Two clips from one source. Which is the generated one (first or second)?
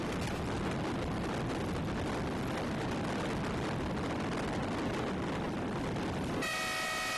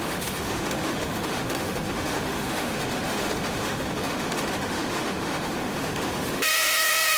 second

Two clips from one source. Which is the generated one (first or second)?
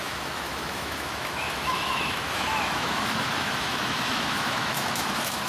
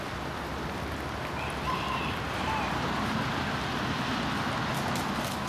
first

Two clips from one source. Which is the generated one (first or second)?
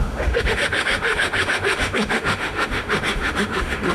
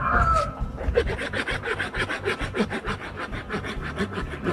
first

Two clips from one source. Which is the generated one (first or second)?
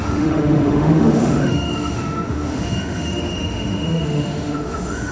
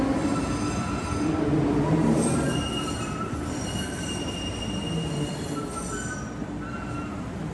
first